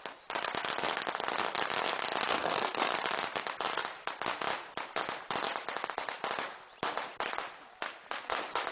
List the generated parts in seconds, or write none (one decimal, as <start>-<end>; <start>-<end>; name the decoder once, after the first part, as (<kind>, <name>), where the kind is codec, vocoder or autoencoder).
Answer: 2.3-2.9 (codec, SNAC)